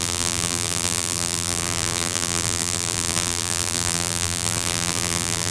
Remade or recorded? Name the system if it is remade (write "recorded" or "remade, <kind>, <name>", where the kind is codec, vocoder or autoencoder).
remade, vocoder, BigVGAN v2